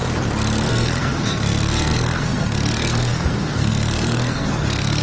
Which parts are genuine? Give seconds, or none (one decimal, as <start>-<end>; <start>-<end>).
0.0-0.7